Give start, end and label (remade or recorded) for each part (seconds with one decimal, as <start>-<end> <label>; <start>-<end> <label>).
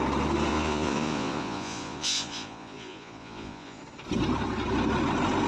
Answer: 0.0-0.5 recorded; 0.5-3.8 remade; 3.8-5.5 recorded